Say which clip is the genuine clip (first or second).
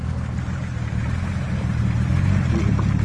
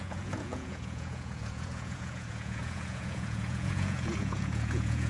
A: first